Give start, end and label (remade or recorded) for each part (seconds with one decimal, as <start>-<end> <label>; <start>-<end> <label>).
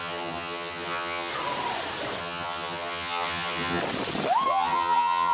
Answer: 0.0-1.3 remade; 1.3-2.2 recorded; 2.2-3.8 remade; 3.8-4.5 recorded; 4.5-5.3 remade